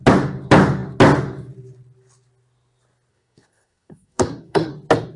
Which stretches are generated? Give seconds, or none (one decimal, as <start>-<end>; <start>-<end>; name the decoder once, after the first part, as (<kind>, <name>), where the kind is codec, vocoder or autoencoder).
3.1-4.7 (codec, SNAC)